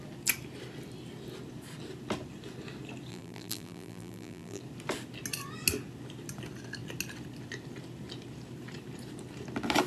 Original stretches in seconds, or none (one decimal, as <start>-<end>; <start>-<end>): 0.0-3.1; 4.6-9.9